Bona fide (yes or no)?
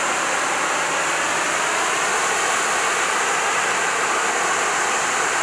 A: no